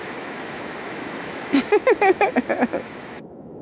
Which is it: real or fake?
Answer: fake